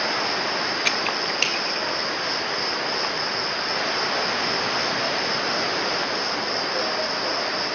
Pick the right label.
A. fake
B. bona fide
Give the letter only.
B